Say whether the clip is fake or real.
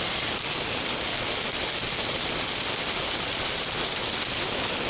real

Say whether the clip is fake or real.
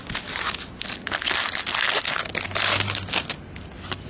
real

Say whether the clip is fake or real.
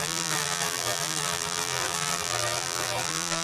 fake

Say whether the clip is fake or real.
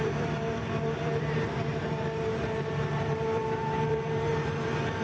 fake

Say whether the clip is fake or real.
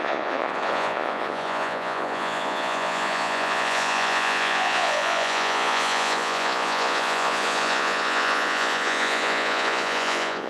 fake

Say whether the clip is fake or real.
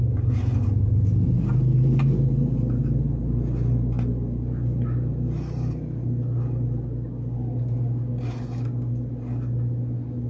real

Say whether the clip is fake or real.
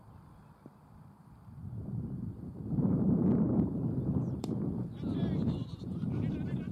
fake